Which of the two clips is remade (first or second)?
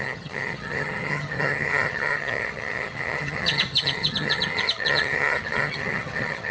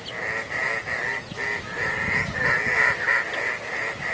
first